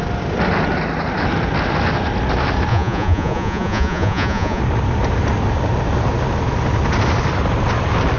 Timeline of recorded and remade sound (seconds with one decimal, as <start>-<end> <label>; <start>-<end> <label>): 0.0-2.7 recorded; 2.7-4.6 remade; 4.6-8.2 recorded